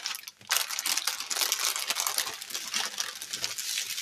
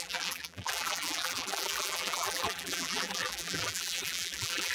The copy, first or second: second